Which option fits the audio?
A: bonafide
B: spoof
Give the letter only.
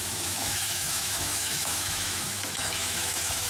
B